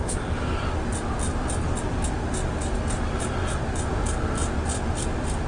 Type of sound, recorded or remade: recorded